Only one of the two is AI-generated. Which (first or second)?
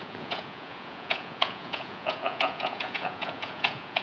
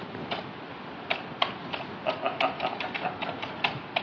first